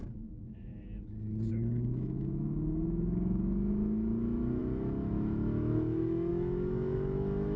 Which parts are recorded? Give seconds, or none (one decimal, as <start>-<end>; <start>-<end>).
0.7-1.5